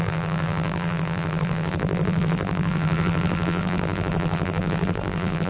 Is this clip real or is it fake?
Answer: fake